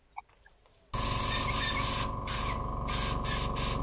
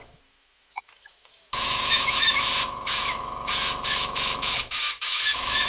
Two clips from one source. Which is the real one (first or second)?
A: first